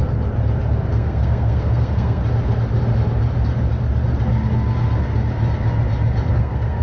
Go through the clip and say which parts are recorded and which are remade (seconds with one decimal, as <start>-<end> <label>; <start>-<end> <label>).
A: 0.0-0.9 recorded; 0.9-2.2 remade; 2.2-6.3 recorded; 6.3-6.8 remade